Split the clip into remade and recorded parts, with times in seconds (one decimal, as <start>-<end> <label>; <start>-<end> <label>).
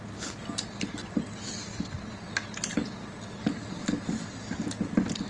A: 0.0-5.3 recorded